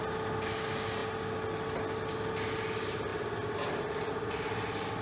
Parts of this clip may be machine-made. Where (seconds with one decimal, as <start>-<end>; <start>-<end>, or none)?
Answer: none